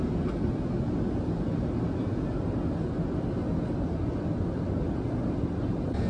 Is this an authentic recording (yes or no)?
yes